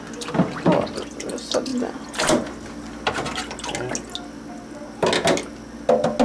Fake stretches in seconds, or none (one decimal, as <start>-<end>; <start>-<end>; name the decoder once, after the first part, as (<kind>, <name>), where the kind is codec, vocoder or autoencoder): none